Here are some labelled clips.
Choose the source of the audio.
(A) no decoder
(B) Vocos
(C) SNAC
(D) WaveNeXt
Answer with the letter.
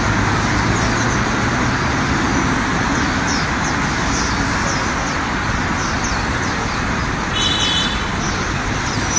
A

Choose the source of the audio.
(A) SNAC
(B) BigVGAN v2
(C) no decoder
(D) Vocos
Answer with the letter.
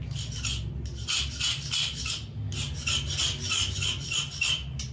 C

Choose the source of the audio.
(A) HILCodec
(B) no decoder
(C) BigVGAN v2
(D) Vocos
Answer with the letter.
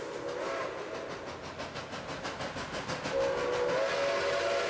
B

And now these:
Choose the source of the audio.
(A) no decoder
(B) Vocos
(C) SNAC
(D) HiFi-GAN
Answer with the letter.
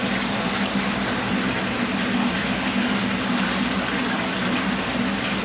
A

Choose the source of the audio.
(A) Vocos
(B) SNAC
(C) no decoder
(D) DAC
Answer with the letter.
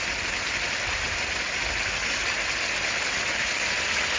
C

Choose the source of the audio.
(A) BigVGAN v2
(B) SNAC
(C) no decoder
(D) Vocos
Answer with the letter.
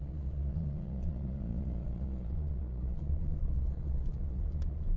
D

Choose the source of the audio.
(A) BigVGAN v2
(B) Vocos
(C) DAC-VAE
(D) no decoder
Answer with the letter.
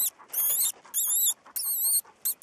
D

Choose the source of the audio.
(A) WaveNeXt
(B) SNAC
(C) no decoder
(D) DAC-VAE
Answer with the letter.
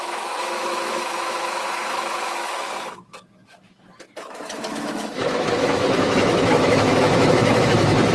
D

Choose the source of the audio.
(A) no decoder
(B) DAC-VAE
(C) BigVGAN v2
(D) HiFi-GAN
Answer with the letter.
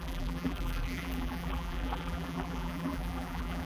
C